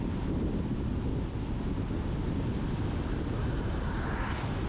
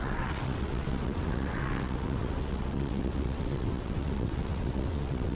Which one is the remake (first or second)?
second